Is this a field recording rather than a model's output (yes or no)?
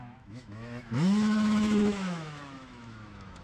no